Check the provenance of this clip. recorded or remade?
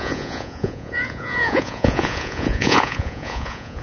remade